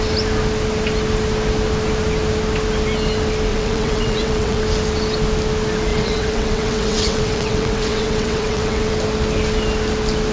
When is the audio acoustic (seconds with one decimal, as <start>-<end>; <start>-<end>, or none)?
0.0-3.5; 4.6-5.9; 8.9-10.3